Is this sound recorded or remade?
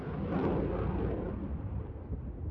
recorded